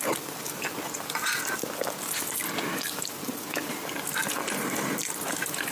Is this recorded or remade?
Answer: recorded